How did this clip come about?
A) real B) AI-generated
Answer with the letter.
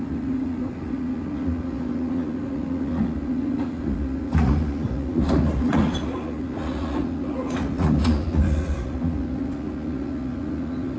B